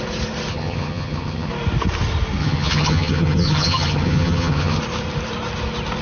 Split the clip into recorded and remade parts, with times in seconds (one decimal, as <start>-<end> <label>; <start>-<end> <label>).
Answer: 0.0-0.5 recorded; 0.5-1.5 remade; 1.5-2.4 recorded; 2.4-4.8 remade; 4.8-6.0 recorded